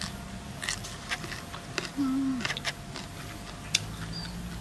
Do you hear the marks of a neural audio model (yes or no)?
no